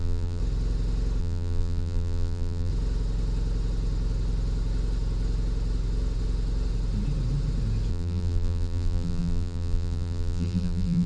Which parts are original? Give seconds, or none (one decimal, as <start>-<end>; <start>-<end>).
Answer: 0.4-1.2; 2.7-7.9